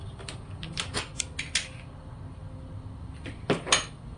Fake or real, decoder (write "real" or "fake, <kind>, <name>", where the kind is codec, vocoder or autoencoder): real